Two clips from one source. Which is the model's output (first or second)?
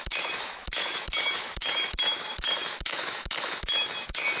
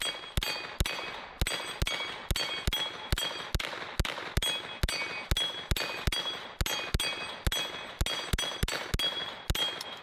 first